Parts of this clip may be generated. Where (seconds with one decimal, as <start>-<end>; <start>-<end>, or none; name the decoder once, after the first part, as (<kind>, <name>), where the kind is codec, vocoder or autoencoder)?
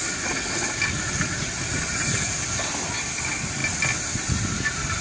none